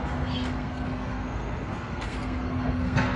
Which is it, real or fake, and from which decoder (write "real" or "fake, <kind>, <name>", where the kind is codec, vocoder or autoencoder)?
fake, codec, SNAC